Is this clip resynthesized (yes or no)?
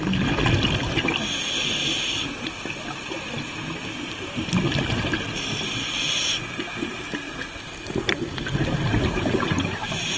no